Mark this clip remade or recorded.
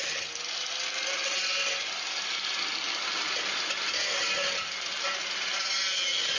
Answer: recorded